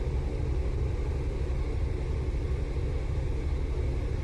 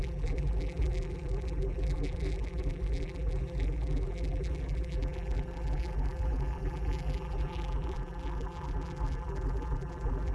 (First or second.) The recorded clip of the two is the first